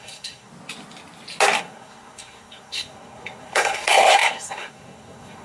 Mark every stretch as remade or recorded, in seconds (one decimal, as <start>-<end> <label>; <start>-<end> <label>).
0.0-0.5 remade; 0.5-1.6 recorded; 1.6-5.4 remade